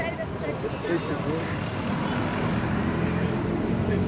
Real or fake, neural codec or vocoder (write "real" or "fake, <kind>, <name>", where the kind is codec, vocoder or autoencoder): real